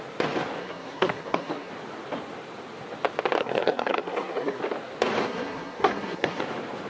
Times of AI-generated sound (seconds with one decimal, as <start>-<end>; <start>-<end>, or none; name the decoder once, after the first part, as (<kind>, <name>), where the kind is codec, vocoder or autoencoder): 0.6-1.7 (codec, SNAC); 3.4-4.6; 5.2-6.4